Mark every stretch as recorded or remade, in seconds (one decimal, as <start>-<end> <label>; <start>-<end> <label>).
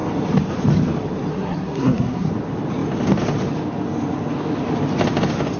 0.0-1.3 recorded; 1.3-2.3 remade; 2.3-5.6 recorded